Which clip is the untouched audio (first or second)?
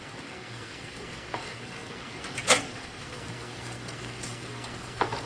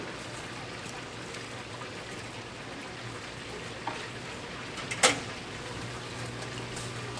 second